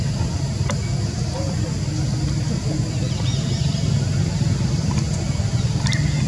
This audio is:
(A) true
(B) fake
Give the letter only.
A